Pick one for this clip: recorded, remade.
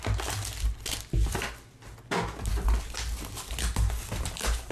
recorded